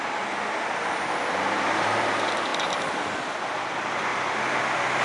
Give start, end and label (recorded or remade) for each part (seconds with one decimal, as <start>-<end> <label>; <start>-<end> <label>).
0.0-5.0 recorded